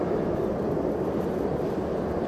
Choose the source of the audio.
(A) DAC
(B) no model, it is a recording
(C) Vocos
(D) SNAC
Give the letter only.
B